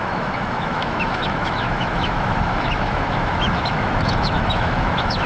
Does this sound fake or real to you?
fake